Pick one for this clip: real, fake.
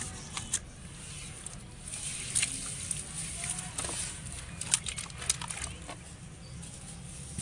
real